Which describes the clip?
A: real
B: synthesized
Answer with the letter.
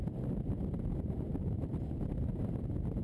B